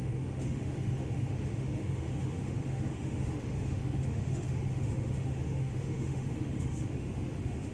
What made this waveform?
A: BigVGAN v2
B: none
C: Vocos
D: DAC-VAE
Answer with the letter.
D